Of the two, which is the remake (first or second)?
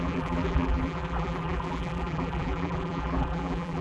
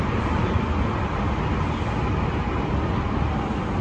first